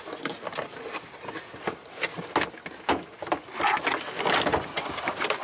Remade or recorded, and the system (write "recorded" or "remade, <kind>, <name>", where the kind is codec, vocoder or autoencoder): recorded